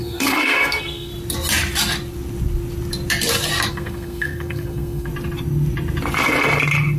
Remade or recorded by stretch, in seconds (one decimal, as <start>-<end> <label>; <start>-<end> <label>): 0.0-1.1 remade; 1.1-3.7 recorded; 3.7-5.1 remade; 5.1-7.0 recorded